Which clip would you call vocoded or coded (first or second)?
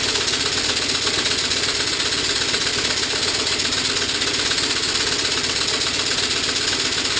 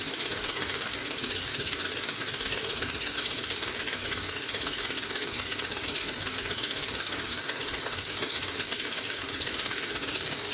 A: second